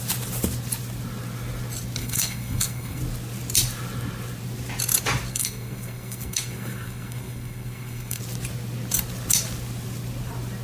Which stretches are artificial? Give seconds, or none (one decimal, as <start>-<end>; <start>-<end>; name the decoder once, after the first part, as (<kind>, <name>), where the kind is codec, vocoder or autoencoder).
2.0-3.0 (codec, SNAC); 5.3-8.2